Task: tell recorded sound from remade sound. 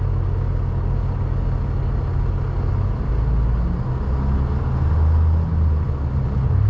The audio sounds recorded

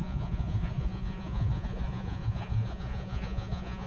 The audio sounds remade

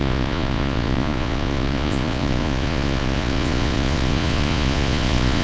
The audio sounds remade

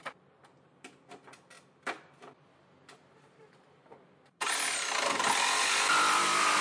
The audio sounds recorded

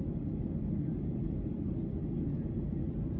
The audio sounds recorded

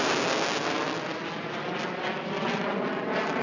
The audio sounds recorded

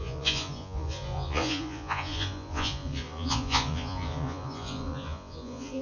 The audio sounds remade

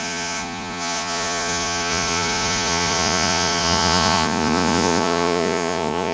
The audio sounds remade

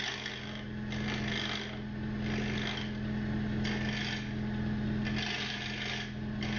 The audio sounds recorded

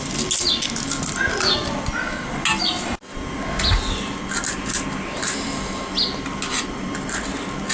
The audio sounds recorded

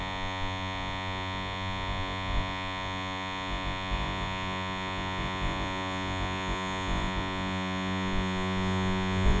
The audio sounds remade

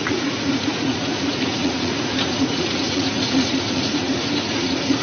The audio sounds remade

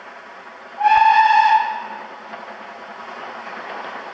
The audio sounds recorded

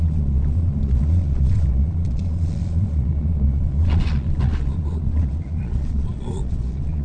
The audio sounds remade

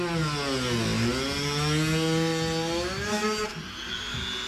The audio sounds recorded